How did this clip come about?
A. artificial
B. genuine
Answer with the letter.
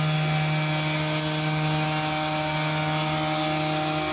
B